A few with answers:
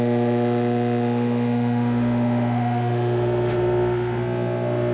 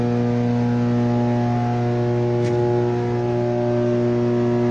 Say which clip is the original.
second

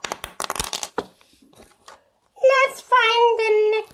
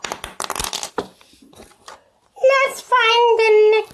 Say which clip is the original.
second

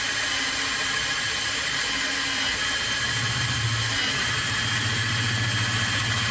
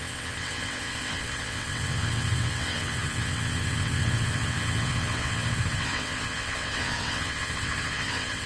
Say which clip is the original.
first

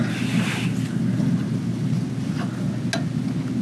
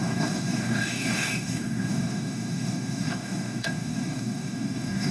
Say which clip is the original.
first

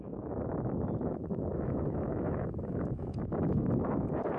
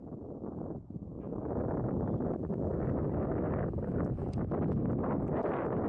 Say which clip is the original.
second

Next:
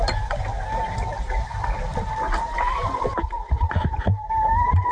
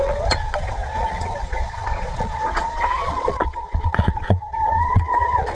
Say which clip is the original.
first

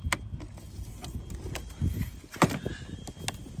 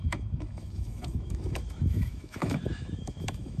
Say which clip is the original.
first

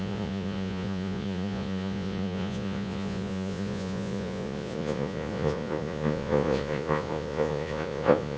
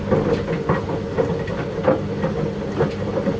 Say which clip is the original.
second